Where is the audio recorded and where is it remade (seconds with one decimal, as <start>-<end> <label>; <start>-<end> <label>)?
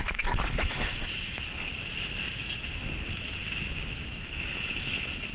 0.0-1.7 remade; 1.7-4.1 recorded; 4.1-5.3 remade